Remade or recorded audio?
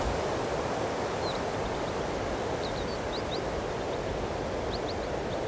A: recorded